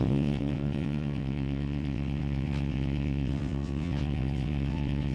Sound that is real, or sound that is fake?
fake